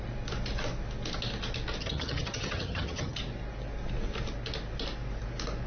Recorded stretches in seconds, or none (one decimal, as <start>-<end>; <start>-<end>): 0.0-1.8; 3.2-5.7